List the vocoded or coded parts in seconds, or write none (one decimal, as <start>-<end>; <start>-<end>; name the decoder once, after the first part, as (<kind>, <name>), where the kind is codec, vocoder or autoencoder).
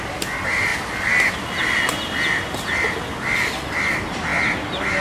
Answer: none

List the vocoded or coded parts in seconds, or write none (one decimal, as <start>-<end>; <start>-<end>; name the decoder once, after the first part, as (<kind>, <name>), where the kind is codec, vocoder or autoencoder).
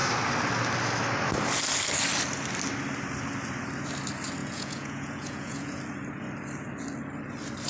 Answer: 4.4-5.8 (vocoder, Vocos)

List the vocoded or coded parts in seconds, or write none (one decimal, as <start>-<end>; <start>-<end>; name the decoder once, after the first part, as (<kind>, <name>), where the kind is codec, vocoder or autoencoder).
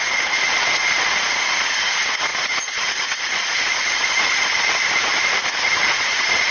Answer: 0.0-6.5 (vocoder, Vocos)